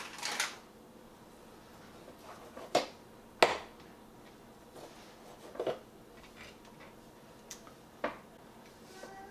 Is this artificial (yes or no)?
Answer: no